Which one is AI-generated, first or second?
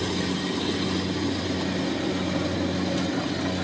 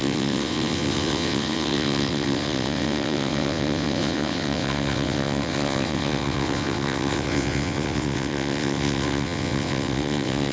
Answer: second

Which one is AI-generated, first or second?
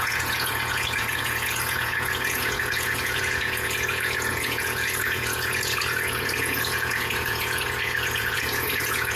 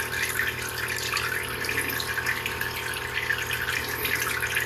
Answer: first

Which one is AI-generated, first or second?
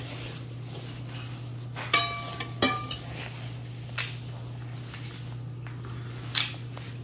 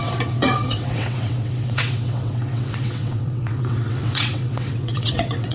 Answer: second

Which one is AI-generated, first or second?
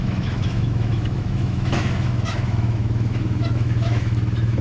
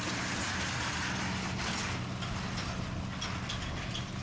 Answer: first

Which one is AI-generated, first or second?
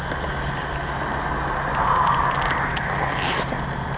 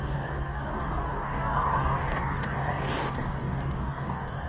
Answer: second